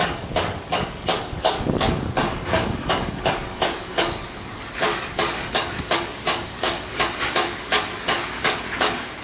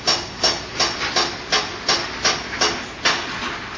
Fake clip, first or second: first